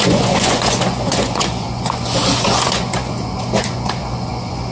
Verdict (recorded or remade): remade